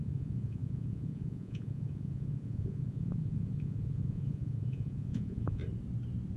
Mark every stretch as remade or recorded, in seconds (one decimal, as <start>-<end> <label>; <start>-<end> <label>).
0.0-5.6 remade; 5.6-6.4 recorded